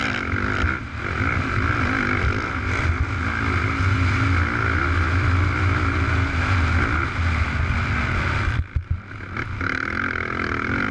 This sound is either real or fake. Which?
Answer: real